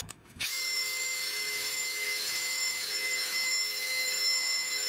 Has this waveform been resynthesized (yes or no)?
yes